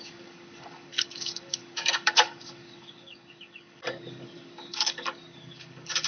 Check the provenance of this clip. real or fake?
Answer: fake